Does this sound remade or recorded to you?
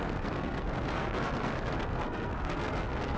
remade